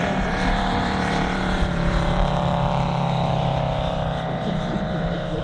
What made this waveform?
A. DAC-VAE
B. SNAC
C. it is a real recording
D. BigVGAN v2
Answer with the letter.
D